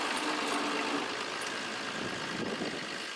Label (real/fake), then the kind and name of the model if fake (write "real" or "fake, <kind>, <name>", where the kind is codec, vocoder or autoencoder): real